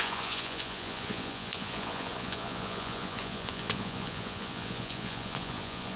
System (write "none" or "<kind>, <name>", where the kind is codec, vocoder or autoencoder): vocoder, Vocos